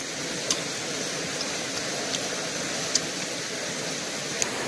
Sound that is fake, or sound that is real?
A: real